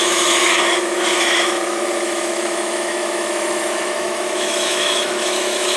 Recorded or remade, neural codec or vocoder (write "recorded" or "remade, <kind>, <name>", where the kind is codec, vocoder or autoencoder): remade, autoencoder, DAC-VAE